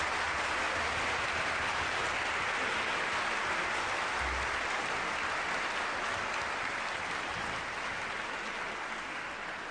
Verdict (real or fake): real